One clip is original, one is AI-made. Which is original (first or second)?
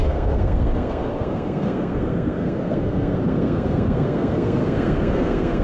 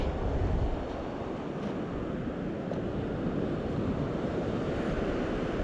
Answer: second